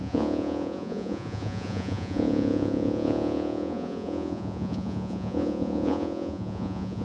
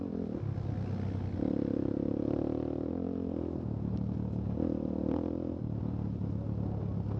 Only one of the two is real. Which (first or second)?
second